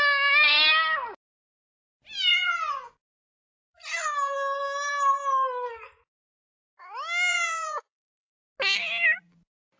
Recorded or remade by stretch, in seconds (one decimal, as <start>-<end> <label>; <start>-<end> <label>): 0.0-2.3 recorded; 2.3-2.9 remade; 2.9-7.3 recorded; 7.3-8.3 remade; 8.3-9.8 recorded